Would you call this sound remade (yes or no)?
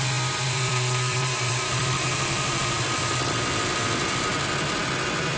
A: yes